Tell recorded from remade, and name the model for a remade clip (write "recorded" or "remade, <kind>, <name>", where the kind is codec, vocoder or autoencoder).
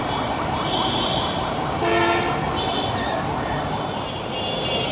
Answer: recorded